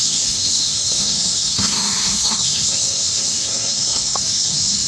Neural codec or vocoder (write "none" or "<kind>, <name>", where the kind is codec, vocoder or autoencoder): codec, SNAC